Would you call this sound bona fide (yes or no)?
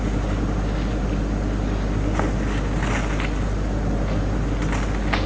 yes